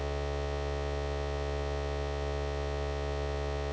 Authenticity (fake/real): real